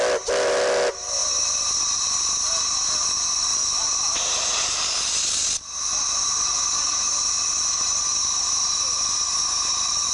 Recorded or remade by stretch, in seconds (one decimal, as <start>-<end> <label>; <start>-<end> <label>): 0.0-10.1 recorded